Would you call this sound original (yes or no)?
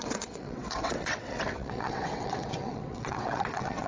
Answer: no